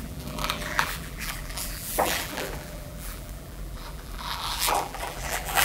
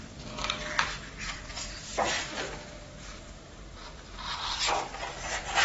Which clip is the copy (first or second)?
first